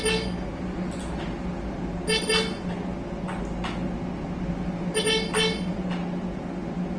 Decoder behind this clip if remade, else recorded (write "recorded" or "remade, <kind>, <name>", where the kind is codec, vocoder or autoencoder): recorded